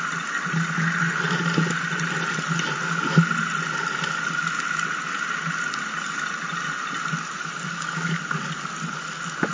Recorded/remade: recorded